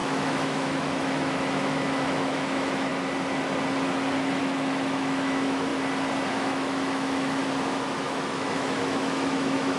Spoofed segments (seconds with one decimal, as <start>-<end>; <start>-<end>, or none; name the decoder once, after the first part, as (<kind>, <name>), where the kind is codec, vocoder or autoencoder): 0.0-2.9 (autoencoder, DAC-VAE); 4.4-5.7; 6.3-7.4; 8.0-9.8